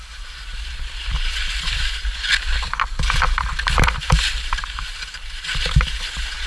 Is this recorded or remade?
recorded